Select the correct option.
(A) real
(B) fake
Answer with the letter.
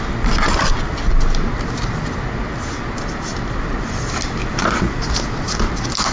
A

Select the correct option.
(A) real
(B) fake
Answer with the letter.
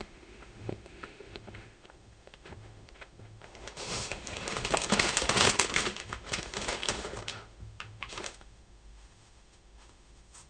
B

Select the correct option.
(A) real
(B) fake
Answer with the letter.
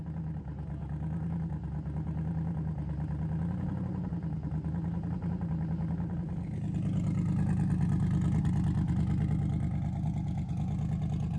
A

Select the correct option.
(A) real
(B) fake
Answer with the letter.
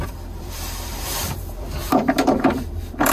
B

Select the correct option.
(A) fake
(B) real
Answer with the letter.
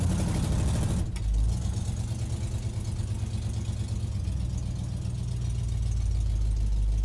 B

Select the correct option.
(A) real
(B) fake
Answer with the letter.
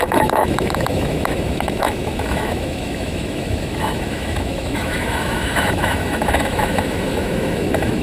B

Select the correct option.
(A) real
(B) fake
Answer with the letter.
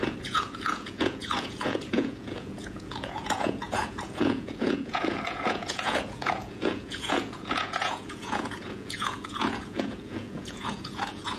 B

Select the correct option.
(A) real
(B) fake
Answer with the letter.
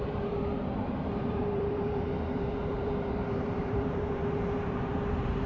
B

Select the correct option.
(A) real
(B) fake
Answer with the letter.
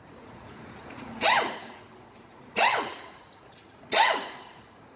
B